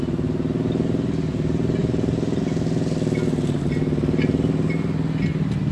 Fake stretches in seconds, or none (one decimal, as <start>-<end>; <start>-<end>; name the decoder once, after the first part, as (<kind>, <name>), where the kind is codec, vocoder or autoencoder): 1.8-2.4 (vocoder, BigVGAN v2)

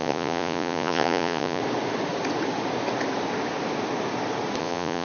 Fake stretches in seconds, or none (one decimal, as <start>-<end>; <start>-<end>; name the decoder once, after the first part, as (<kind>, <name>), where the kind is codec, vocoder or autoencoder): 0.0-1.6 (vocoder, Vocos); 4.6-5.0

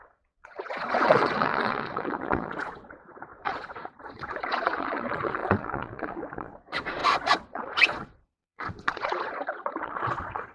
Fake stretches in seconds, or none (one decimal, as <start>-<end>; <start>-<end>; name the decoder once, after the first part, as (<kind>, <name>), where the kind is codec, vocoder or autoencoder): 0.0-10.5 (vocoder, Vocos)

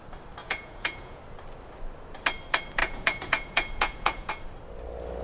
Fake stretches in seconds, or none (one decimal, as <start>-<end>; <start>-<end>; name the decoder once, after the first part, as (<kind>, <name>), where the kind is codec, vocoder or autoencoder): 0.4-1.2 (vocoder, Vocos); 2.8-4.3

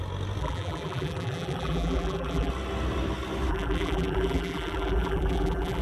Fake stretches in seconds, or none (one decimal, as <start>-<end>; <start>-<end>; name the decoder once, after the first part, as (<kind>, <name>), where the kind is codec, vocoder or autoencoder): 0.4-2.5 (vocoder, BigVGAN v2); 3.5-5.8

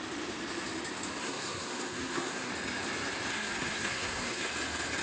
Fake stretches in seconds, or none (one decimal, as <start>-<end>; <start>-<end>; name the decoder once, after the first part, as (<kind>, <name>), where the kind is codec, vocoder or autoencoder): 1.2-2.5 (codec, SNAC); 3.3-4.5